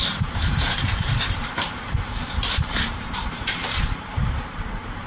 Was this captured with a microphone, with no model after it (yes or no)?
no